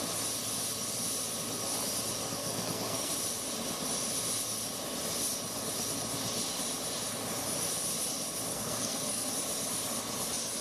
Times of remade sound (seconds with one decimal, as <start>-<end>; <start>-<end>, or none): 2.4-3.1; 8.5-9.3

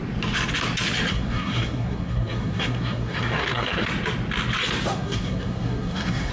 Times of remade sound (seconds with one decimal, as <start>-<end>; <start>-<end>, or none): 1.1-3.9; 4.9-6.3

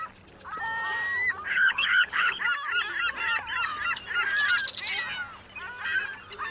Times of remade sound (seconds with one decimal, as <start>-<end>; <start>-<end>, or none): 1.5-2.4

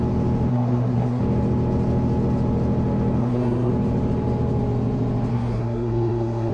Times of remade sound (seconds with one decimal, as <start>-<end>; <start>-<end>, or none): 0.5-1.2; 3.2-3.7; 5.3-6.5

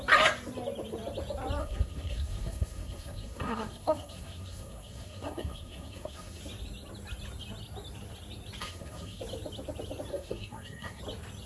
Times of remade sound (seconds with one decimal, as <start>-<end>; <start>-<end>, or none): 1.6-6.4; 8.6-9.2; 10.1-11.0

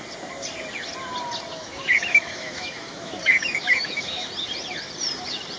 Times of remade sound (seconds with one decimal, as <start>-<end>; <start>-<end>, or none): 1.5-4.3

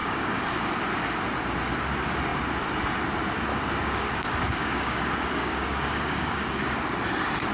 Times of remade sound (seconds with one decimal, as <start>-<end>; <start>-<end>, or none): 0.0-0.7; 3.5-6.8

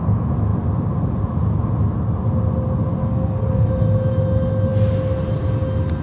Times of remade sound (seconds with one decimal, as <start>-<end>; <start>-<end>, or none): 3.0-3.7